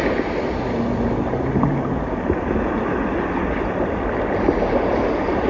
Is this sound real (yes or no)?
yes